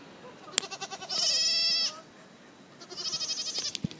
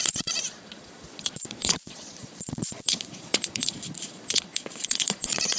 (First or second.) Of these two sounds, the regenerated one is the second